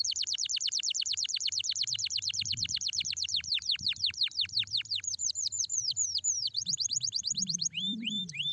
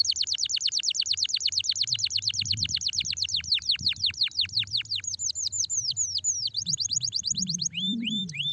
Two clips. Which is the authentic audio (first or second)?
second